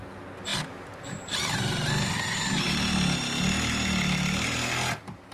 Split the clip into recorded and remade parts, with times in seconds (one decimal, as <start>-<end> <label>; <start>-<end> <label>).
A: 0.0-5.3 recorded

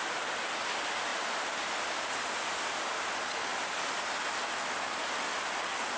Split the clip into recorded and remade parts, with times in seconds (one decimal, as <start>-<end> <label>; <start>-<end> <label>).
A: 0.0-3.5 recorded; 3.5-4.2 remade; 4.2-6.0 recorded

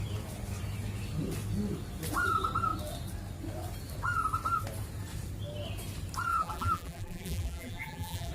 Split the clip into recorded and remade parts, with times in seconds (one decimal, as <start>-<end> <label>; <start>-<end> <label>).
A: 0.0-6.3 recorded; 6.3-8.3 remade

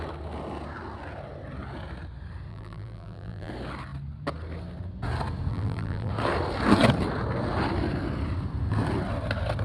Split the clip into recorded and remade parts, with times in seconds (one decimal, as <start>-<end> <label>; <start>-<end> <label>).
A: 0.0-2.5 recorded; 2.5-3.5 remade; 3.5-5.5 recorded; 5.5-6.1 remade; 6.1-9.6 recorded

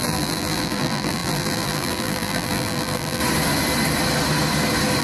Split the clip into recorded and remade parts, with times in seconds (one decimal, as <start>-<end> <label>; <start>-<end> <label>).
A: 0.0-3.2 remade; 3.2-5.0 recorded